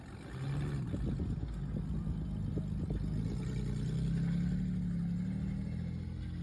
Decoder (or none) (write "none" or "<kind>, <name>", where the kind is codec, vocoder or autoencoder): none